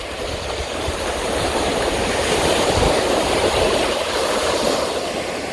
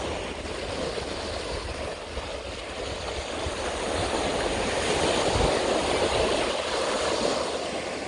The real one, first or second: second